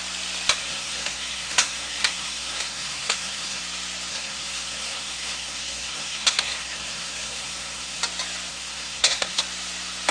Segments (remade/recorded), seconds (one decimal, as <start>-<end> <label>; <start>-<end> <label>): 0.0-0.6 recorded; 0.6-3.6 remade; 3.6-4.1 recorded; 4.1-8.0 remade; 8.0-8.5 recorded; 8.5-9.4 remade; 9.4-10.1 recorded